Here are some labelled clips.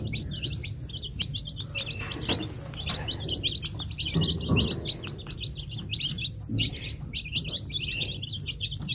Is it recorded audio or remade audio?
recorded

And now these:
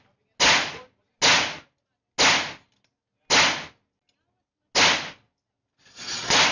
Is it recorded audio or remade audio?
recorded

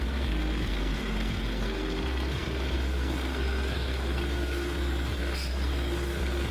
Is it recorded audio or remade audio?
remade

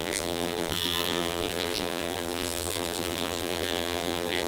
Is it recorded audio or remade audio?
remade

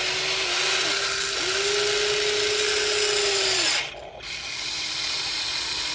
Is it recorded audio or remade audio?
recorded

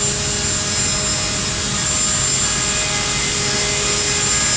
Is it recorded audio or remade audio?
recorded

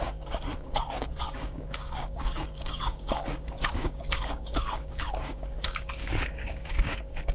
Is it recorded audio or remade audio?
remade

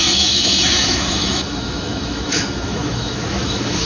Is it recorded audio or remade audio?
remade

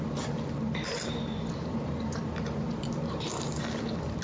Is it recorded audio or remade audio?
recorded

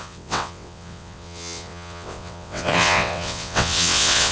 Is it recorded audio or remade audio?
remade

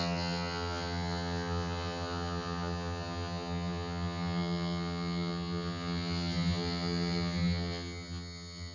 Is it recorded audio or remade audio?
remade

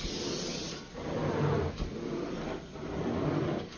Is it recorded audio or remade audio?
recorded